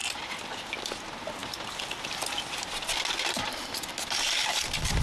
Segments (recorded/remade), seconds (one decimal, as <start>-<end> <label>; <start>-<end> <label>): 0.0-0.8 remade; 0.8-1.4 recorded; 1.4-3.9 remade; 3.9-5.0 recorded